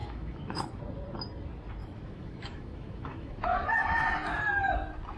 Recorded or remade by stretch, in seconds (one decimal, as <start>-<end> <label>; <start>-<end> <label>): 0.0-0.8 remade; 0.8-1.8 recorded; 1.8-4.0 remade; 4.0-5.2 recorded